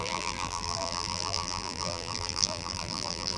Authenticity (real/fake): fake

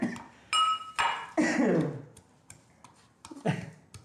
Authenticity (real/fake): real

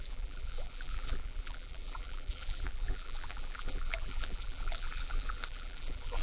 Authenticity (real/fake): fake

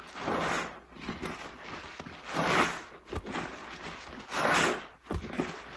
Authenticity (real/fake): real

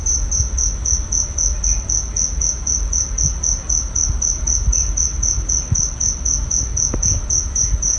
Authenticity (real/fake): real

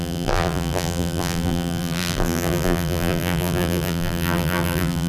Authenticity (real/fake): fake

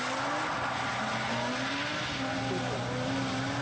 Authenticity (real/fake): real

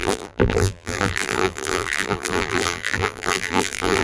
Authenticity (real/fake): fake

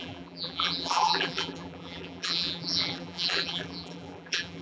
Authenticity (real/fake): fake